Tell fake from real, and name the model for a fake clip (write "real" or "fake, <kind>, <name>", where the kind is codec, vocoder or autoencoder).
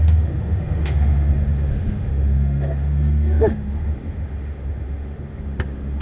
fake, autoencoder, DAC-VAE